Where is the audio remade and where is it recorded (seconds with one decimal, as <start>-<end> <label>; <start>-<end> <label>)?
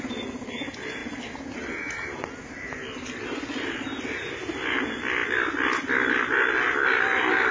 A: 0.0-7.5 recorded